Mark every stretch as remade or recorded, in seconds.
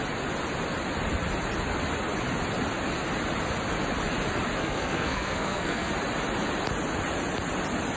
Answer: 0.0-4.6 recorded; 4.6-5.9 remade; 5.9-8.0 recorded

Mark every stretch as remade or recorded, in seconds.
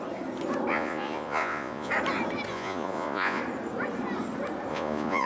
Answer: 0.0-0.7 recorded; 0.7-1.9 remade; 1.9-2.5 recorded; 2.5-3.4 remade; 3.4-4.7 recorded; 4.7-5.3 remade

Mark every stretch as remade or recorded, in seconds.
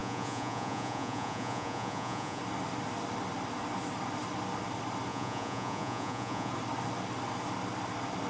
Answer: 0.0-2.4 remade; 2.4-5.1 recorded; 5.1-6.5 remade; 6.5-8.3 recorded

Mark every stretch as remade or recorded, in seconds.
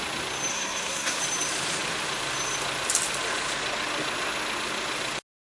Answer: 0.0-0.5 recorded; 0.5-1.2 remade; 1.2-5.4 recorded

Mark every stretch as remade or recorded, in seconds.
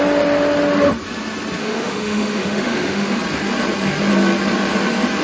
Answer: 0.0-1.6 recorded; 1.6-3.2 remade; 3.2-5.2 recorded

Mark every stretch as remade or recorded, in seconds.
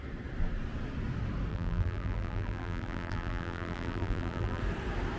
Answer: 0.0-1.5 recorded; 1.5-4.6 remade; 4.6-5.2 recorded